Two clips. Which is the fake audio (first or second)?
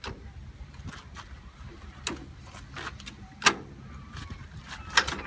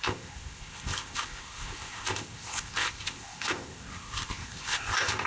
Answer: second